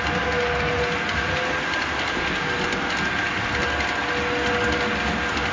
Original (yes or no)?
yes